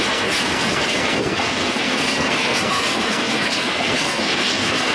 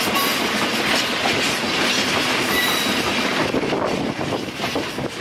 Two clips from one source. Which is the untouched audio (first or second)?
second